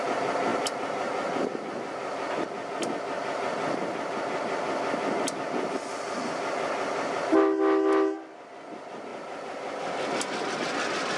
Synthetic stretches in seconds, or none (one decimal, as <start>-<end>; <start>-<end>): none